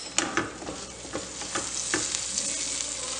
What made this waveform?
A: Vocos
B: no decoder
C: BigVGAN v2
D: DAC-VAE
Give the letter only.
B